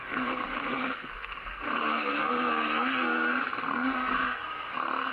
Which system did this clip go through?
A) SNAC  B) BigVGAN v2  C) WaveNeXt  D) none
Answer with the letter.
A